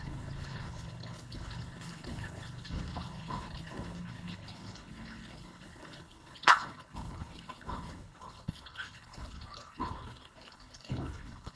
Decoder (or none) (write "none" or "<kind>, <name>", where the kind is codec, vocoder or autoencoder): codec, HILCodec